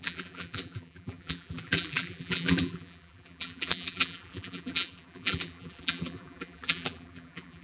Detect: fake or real fake